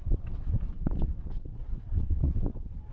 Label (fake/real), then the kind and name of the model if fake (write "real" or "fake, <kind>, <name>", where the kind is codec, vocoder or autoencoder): fake, vocoder, WaveNeXt